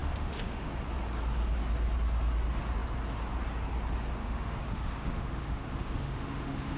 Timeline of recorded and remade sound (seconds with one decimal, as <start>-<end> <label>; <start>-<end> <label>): 0.0-0.7 remade; 0.7-4.2 recorded; 4.2-6.8 remade